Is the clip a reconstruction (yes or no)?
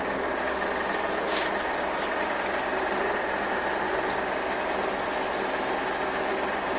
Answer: no